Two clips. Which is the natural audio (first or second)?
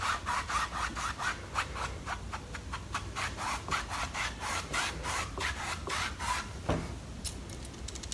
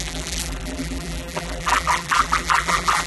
first